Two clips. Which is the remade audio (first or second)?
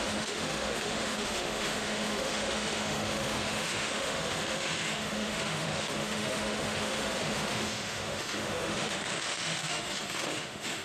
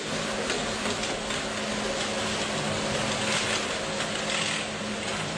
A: first